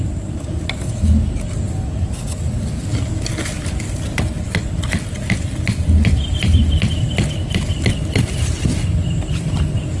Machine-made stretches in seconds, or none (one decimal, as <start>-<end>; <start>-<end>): none